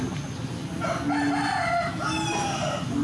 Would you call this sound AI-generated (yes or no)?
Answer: no